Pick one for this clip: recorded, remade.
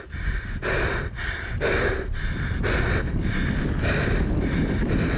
recorded